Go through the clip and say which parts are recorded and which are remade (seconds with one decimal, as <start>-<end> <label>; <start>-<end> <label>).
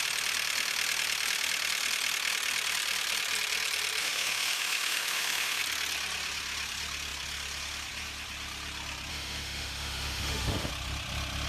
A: 0.0-4.0 recorded; 4.0-5.6 remade; 5.6-9.1 recorded; 9.1-10.7 remade; 10.7-11.5 recorded